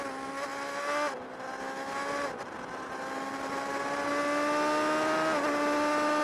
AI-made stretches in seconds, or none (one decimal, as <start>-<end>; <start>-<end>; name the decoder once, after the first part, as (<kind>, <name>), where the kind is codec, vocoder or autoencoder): none